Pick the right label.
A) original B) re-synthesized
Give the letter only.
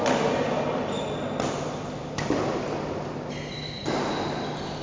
A